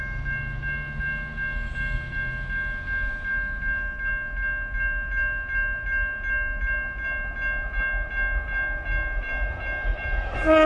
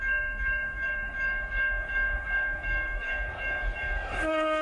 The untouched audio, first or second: first